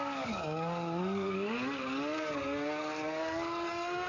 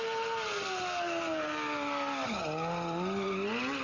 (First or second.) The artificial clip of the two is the first